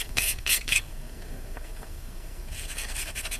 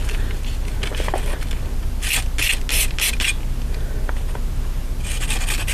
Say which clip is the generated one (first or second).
first